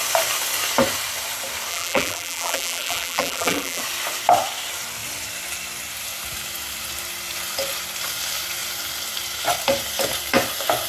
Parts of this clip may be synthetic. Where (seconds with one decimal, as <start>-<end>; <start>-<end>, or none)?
1.7-3.8